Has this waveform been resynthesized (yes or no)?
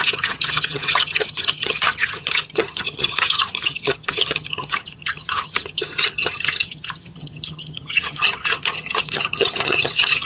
yes